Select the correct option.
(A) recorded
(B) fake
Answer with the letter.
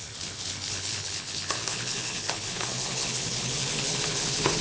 B